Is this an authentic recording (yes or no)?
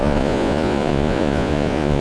no